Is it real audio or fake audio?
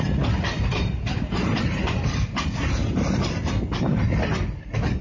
real